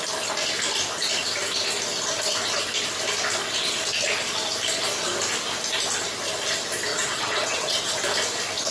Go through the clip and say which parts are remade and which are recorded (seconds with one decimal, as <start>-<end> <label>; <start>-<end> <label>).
0.0-6.9 recorded; 6.9-8.0 remade; 8.0-8.7 recorded